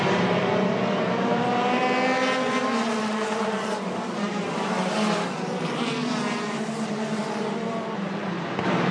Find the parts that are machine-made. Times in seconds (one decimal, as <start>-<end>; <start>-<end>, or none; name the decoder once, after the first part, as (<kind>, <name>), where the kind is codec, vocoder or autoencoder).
0.0-1.8 (vocoder, BigVGAN v2); 3.0-8.9